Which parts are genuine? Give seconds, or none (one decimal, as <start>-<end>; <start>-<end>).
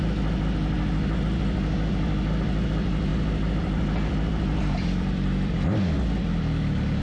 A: 0.0-3.1; 5.5-7.0